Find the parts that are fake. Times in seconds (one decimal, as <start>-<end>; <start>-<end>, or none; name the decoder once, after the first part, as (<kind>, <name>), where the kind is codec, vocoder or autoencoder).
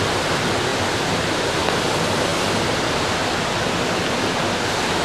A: 0.7-1.9 (vocoder, BigVGAN v2)